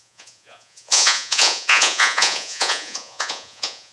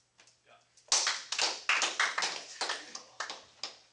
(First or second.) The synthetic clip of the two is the first